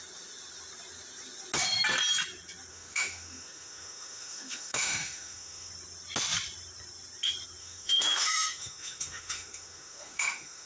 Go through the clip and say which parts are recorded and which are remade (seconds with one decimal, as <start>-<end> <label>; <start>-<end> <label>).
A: 0.0-2.7 recorded; 2.7-5.7 remade; 5.7-7.6 recorded; 7.6-10.7 remade